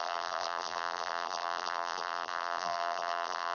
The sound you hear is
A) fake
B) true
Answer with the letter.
A